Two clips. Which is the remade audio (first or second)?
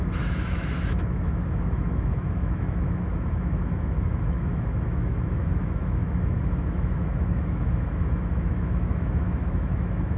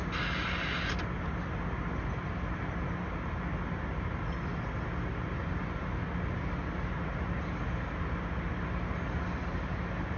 first